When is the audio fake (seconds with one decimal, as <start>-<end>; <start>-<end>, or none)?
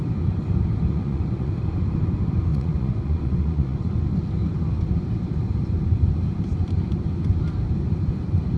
0.9-1.5; 2.5-3.9